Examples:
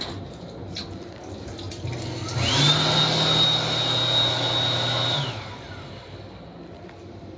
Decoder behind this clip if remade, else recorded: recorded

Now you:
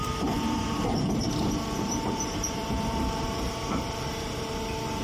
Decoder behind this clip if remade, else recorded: remade, vocoder, BigVGAN v2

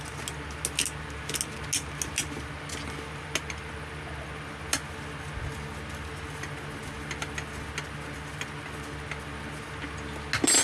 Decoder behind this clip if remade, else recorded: recorded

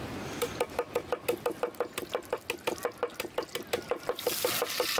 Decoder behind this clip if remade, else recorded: recorded